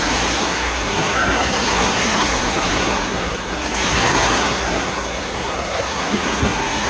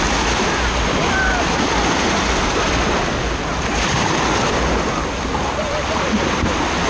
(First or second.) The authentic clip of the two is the second